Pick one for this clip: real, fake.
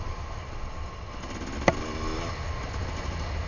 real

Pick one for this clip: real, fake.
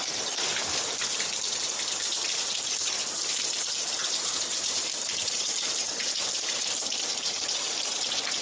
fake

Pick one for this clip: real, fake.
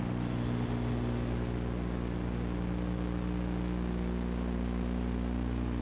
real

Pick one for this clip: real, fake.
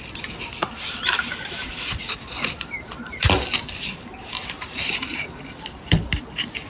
fake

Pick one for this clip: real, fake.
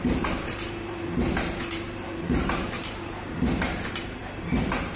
fake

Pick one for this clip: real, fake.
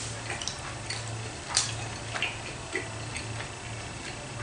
real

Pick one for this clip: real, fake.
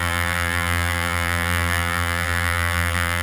fake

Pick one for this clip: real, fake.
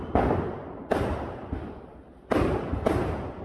real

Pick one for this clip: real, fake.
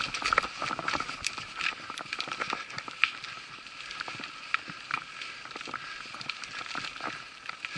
real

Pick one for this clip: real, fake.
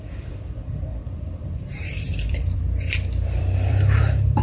fake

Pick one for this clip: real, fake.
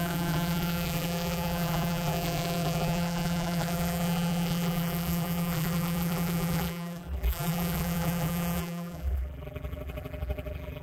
fake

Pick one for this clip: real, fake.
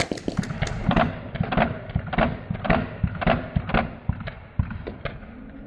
real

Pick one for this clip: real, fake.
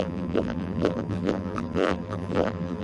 fake